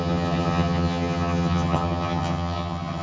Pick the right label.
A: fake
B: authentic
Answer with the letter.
A